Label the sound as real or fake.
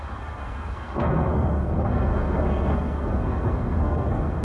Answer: fake